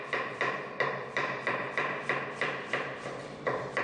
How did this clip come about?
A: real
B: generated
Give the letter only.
B